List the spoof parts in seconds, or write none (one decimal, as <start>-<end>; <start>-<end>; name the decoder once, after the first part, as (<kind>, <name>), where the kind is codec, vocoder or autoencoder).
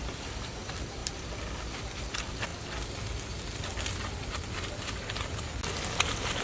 0.0-2.5 (vocoder, BigVGAN v2)